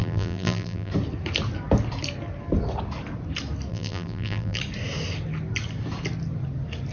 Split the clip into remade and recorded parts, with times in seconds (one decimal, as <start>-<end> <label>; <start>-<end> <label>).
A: 0.0-0.9 remade; 0.9-3.7 recorded; 3.7-4.6 remade; 4.6-6.9 recorded